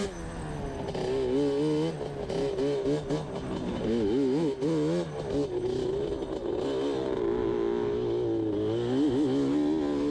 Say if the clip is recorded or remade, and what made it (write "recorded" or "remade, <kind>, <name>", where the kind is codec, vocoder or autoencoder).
recorded